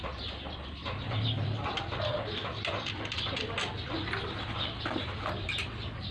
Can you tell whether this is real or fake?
real